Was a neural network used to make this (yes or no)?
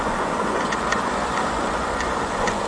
yes